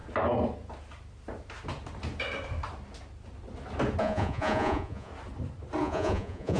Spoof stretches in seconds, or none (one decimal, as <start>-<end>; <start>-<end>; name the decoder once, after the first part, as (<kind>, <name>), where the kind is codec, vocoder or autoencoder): 4.0-5.1 (vocoder, Vocos); 5.8-6.6